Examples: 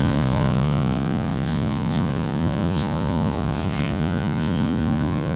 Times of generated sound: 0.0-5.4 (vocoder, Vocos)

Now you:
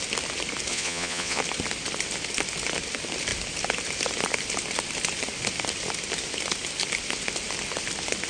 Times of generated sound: 0.7-1.4 (vocoder, Vocos)

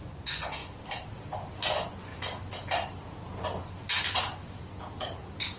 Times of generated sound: 0.0-0.6 (vocoder, Vocos); 1.7-2.1

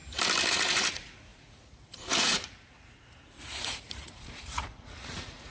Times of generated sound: 0.5-5.5 (vocoder, Vocos)

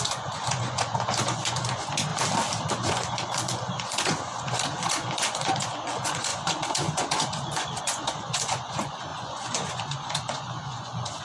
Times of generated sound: 0.0-2.1 (vocoder, Vocos); 2.7-11.2

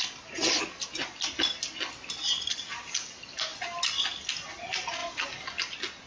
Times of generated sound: none